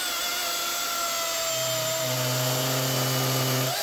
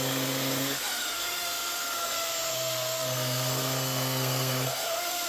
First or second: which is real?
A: first